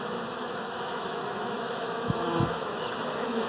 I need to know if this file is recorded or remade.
remade